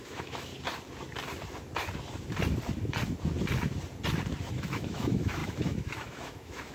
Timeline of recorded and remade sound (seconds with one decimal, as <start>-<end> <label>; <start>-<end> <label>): 0.0-0.5 remade; 0.5-4.5 recorded; 4.5-6.7 remade